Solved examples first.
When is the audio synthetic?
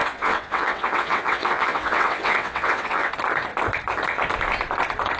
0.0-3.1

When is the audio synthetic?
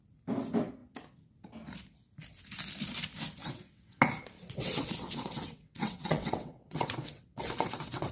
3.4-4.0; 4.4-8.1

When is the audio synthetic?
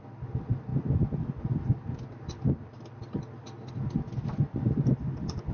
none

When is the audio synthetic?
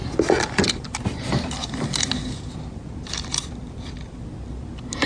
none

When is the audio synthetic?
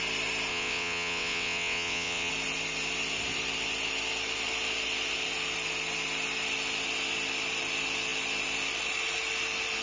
0.5-2.3